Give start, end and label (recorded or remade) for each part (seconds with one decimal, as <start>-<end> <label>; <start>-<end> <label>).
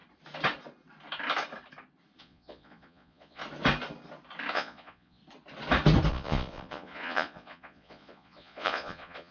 0.0-2.2 recorded; 2.2-3.4 remade; 3.4-4.5 recorded; 4.5-5.2 remade; 5.2-6.1 recorded; 6.1-9.3 remade